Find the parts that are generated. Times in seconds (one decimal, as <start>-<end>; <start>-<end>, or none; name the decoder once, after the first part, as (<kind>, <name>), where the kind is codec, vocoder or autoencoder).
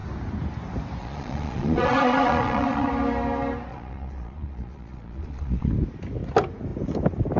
1.0-2.9 (vocoder, Vocos); 3.7-5.7